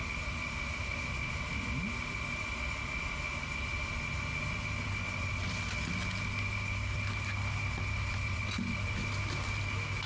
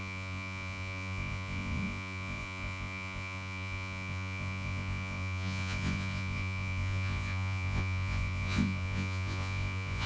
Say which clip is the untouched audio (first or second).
first